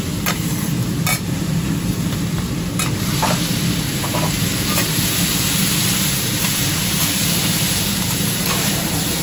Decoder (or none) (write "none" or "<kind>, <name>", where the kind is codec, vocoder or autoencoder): vocoder, BigVGAN v2